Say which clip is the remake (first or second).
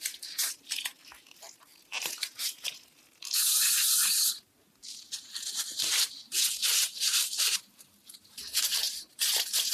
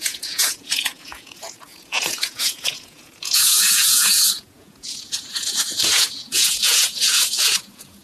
second